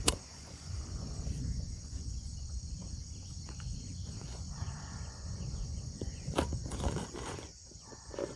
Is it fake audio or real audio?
fake